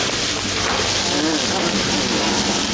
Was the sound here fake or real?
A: real